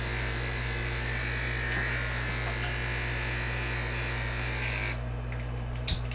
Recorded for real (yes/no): yes